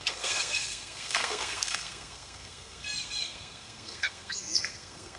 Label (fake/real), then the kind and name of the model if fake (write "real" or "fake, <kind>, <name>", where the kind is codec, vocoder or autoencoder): fake, codec, SNAC